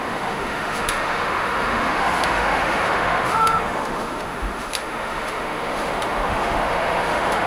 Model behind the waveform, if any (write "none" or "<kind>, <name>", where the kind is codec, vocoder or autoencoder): autoencoder, DAC-VAE